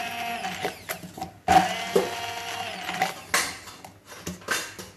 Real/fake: real